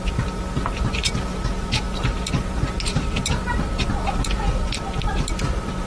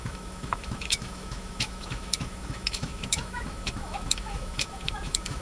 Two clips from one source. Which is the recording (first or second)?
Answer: first